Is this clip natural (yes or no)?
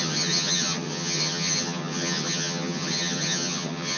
no